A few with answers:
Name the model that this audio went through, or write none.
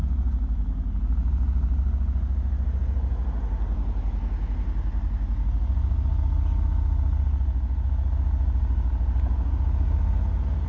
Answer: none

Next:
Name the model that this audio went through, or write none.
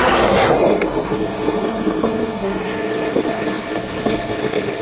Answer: codec, SNAC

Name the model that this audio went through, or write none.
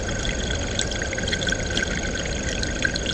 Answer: none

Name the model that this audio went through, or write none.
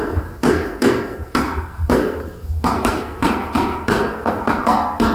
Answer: codec, SNAC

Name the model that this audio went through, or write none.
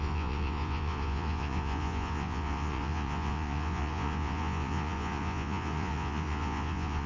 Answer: vocoder, Vocos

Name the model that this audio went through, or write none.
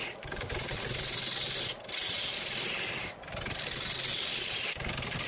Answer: none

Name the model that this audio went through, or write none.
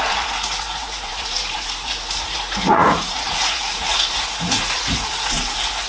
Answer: vocoder, Vocos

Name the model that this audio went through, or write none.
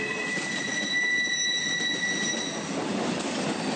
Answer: none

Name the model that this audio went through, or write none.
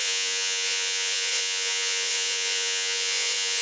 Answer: vocoder, Vocos